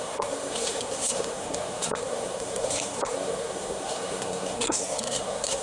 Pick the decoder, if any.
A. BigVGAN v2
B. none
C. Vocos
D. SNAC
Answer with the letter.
D